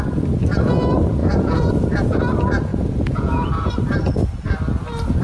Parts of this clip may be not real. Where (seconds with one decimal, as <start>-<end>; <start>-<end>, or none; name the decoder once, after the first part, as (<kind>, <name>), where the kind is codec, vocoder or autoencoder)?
1.2-1.7 (vocoder, Vocos); 2.7-3.7